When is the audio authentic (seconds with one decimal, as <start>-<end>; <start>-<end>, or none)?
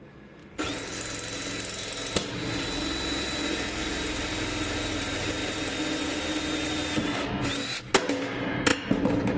0.0-9.4